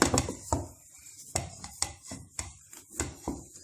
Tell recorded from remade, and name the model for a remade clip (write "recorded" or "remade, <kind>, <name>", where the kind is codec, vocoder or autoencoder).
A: recorded